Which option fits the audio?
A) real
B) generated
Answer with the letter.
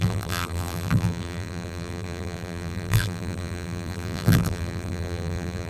B